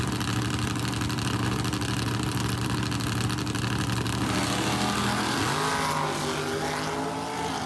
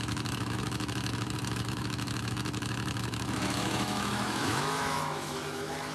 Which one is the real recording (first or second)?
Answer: first